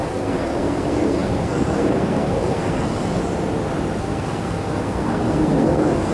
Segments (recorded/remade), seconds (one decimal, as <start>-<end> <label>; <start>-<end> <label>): 0.0-3.2 remade; 3.2-4.0 recorded; 4.0-6.1 remade